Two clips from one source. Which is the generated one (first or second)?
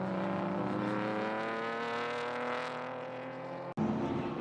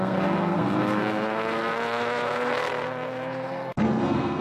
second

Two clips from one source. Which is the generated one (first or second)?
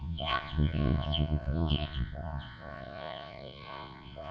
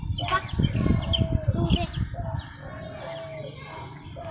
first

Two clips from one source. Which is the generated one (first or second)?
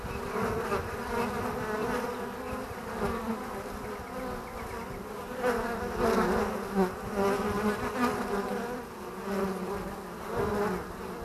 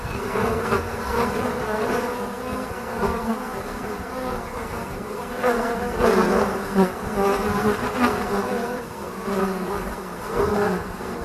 second